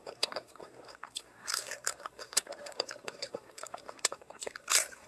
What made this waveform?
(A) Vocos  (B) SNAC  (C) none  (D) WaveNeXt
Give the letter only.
B